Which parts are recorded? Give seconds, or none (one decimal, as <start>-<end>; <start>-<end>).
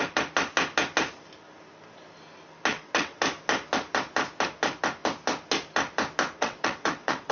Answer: 0.0-2.7; 3.2-6.4